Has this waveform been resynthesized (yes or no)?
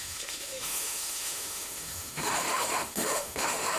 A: yes